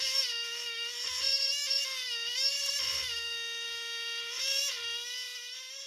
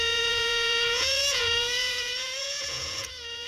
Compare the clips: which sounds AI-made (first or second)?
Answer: second